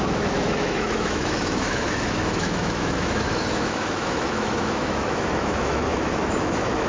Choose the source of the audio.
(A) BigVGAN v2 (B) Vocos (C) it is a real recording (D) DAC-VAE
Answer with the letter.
D